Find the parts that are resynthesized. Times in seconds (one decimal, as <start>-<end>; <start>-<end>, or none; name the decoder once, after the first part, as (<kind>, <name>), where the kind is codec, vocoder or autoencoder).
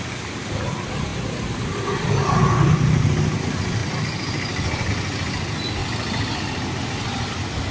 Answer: none